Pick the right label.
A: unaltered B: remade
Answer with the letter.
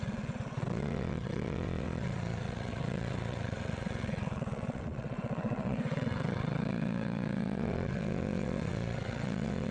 B